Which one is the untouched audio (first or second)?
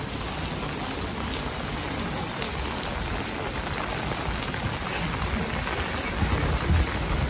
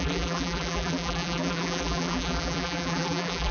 first